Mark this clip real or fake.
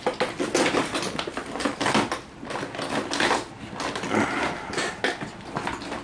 real